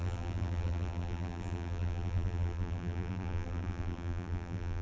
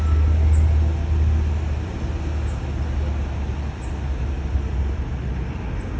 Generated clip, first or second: first